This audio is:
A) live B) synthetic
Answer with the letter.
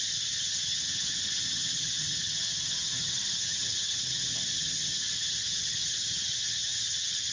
B